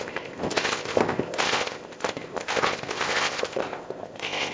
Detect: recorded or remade remade